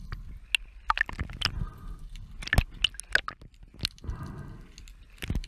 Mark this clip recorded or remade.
recorded